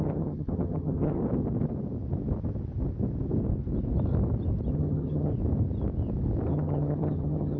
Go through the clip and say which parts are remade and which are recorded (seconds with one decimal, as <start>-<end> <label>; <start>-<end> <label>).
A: 0.0-1.2 remade; 1.2-4.7 recorded; 4.7-5.3 remade; 5.3-6.5 recorded; 6.5-7.6 remade